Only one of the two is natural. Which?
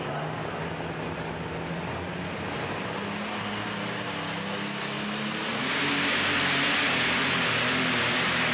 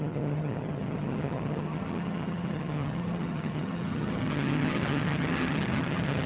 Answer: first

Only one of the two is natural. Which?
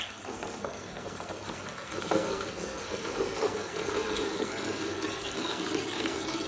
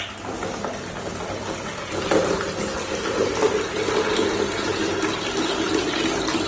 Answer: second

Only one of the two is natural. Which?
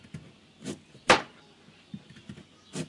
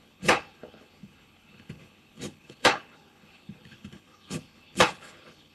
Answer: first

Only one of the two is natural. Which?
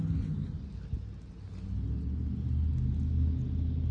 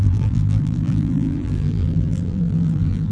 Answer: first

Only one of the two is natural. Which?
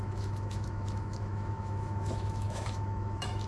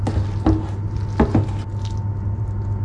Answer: second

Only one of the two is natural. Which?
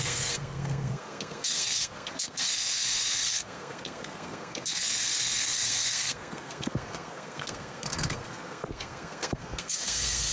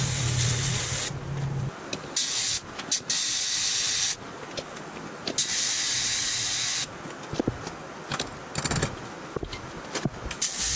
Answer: second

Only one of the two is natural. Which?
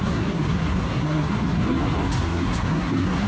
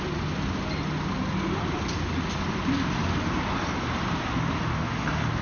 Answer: second